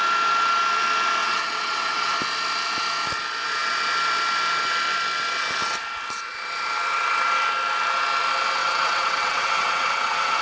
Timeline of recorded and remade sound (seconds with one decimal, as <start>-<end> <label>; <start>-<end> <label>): 0.0-1.2 recorded; 1.2-2.1 remade; 2.1-8.6 recorded; 8.6-10.4 remade